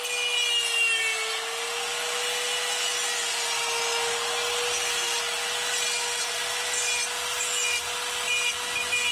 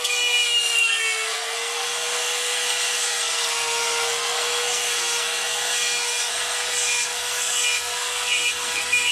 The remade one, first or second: second